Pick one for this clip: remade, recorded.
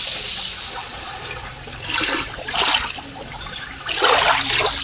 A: recorded